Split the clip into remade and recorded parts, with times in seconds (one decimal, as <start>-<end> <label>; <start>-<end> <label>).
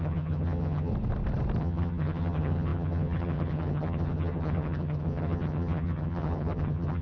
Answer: 0.0-0.9 remade; 0.9-1.6 recorded; 1.6-7.0 remade